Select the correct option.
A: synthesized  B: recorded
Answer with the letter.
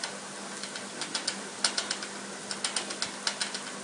B